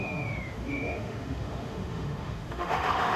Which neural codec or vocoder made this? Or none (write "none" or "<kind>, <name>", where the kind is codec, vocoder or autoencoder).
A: autoencoder, DAC-VAE